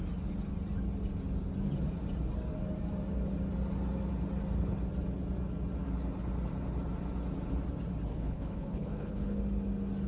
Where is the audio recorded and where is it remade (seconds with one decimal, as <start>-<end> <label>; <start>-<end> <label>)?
0.0-8.1 recorded; 8.1-9.4 remade; 9.4-10.1 recorded